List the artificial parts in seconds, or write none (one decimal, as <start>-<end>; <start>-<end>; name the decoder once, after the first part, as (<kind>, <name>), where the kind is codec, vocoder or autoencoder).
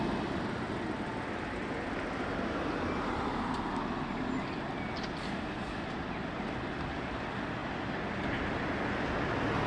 none